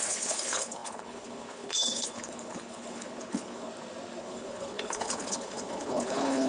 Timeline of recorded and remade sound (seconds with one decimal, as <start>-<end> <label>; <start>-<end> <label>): 0.0-3.7 remade; 3.7-4.2 recorded; 4.2-6.5 remade